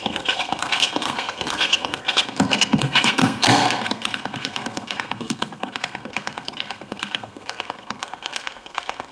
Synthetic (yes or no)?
yes